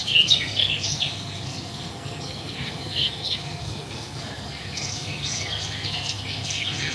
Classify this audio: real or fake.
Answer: fake